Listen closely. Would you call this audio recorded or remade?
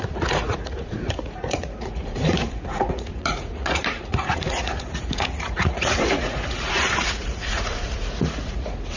remade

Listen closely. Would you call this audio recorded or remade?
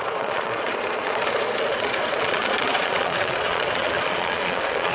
remade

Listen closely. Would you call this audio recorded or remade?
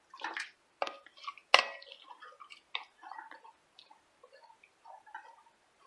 recorded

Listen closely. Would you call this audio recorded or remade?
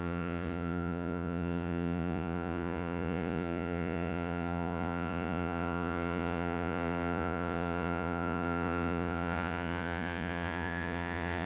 remade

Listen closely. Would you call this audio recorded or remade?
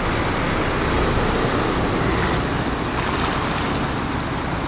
recorded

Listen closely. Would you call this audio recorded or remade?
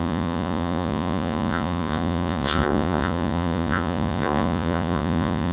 remade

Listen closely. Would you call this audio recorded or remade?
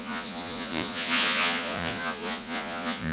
remade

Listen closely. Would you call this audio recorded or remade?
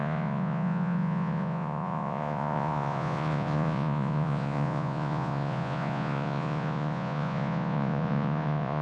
remade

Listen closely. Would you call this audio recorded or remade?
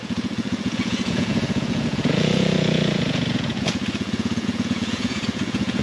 remade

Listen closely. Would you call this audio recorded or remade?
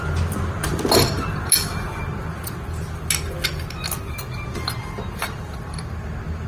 recorded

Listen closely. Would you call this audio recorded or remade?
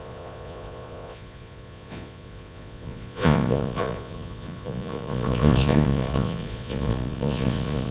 remade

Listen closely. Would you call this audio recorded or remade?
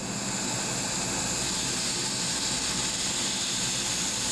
recorded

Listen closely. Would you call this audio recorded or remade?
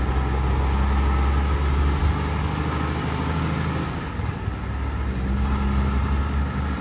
recorded